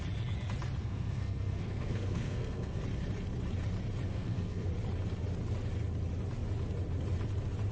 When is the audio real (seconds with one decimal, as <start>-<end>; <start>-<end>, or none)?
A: 0.0-0.8; 2.8-4.1; 4.7-7.7